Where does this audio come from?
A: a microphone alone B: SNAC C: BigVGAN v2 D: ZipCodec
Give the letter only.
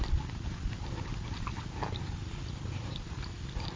A